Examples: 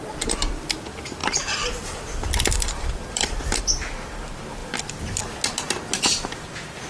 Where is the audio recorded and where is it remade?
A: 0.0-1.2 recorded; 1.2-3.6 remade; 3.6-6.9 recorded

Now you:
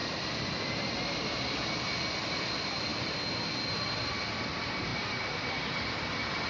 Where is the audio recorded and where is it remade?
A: 0.0-4.9 recorded; 4.9-6.5 remade

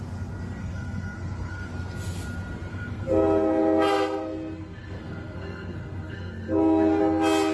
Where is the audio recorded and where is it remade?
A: 0.0-0.6 recorded; 0.6-1.7 remade; 1.7-2.7 recorded; 2.7-7.0 remade; 7.0-7.5 recorded

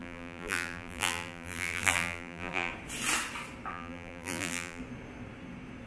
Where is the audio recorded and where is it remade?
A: 0.0-2.7 remade; 2.7-3.7 recorded; 3.7-4.8 remade; 4.8-5.9 recorded